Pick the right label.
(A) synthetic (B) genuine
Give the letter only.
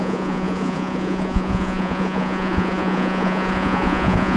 A